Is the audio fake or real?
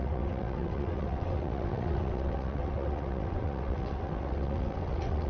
fake